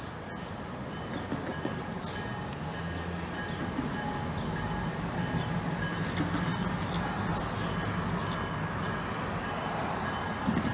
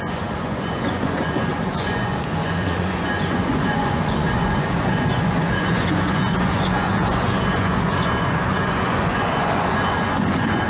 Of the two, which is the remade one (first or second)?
second